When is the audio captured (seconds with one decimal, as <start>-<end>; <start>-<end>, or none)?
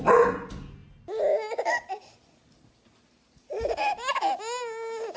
0.0-5.2